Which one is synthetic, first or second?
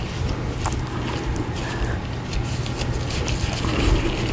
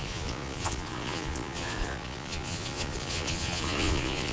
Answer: second